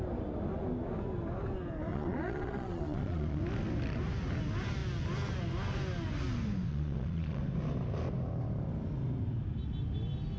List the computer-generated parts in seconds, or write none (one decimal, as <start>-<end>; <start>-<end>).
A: 1.9-3.4; 6.7-7.4